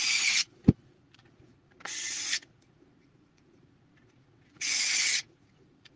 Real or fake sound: fake